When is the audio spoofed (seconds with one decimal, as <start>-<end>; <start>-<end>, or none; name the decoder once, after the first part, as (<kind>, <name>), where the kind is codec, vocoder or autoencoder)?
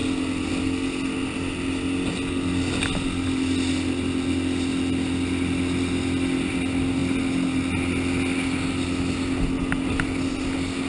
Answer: none